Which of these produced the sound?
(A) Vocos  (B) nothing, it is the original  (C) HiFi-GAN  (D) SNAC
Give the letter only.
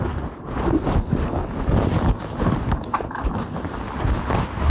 B